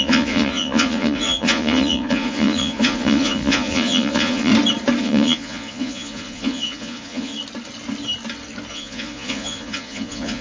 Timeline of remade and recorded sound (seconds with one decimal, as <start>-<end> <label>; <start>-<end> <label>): 0.0-4.5 remade; 4.5-5.0 recorded; 5.0-7.3 remade; 7.3-8.7 recorded; 8.7-10.4 remade